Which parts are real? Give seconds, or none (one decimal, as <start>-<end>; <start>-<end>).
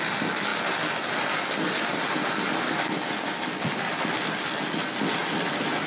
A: 0.0-5.9